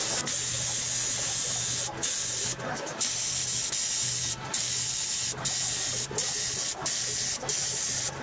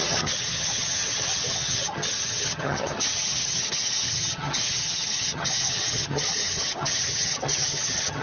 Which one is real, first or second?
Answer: first